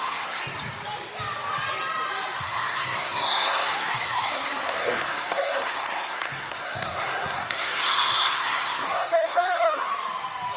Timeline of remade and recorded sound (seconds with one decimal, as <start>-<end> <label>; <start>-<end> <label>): 0.0-0.4 remade; 0.4-2.4 recorded; 2.4-9.9 remade; 9.9-10.6 recorded